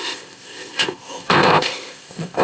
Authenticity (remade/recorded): remade